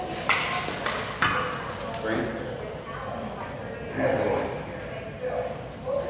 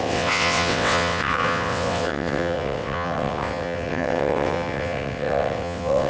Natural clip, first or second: first